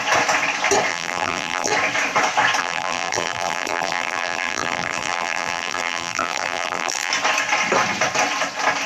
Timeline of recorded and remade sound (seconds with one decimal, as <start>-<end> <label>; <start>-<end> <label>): 0.0-0.9 recorded; 0.9-1.7 remade; 1.7-2.6 recorded; 2.6-7.1 remade; 7.1-8.9 recorded